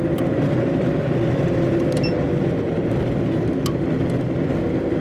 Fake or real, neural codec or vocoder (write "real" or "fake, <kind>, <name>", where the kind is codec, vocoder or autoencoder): real